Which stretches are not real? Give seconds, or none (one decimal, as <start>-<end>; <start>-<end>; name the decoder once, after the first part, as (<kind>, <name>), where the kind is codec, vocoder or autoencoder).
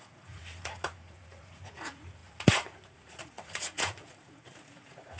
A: 0.0-5.2 (vocoder, Vocos)